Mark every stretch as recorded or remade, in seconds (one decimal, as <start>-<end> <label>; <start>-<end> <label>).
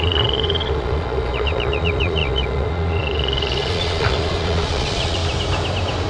0.0-5.2 remade; 5.2-6.1 recorded